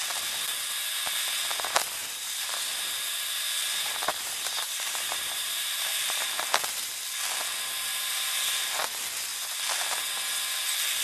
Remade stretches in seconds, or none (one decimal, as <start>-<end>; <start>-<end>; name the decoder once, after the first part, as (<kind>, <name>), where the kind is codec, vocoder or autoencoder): 2.0-2.8 (vocoder, BigVGAN v2); 3.9-6.9; 7.9-8.6